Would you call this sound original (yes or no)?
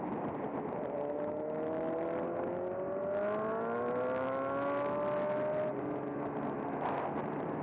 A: yes